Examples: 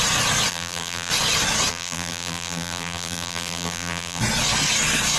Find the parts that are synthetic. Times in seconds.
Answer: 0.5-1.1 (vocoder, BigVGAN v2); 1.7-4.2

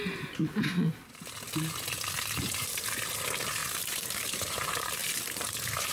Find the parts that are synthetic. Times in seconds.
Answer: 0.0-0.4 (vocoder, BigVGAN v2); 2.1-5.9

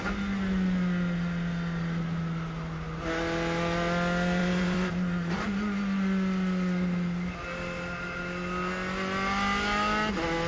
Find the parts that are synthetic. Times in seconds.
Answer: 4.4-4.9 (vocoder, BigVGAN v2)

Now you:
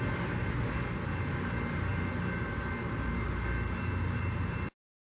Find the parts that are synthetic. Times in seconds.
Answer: 1.9-5.0 (vocoder, BigVGAN v2)

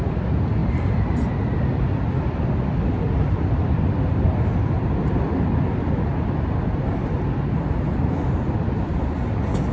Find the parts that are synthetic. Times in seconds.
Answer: 0.6-1.3 (vocoder, BigVGAN v2)

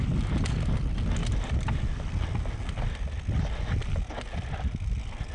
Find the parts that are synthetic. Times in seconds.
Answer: none